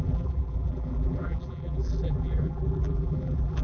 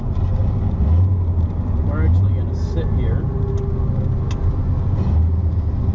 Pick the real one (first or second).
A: second